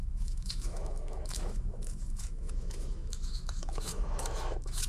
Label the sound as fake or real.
fake